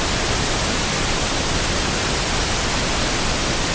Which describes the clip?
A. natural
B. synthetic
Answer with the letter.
A